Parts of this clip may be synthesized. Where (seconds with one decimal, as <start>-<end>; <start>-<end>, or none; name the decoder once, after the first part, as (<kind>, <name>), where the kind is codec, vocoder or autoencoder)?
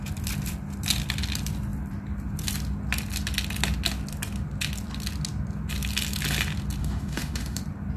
6.8-7.6 (autoencoder, DAC-VAE)